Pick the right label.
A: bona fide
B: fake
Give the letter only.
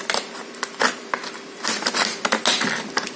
A